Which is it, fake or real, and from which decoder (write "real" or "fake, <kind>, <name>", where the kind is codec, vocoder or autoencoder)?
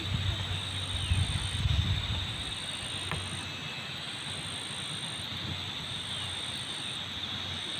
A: real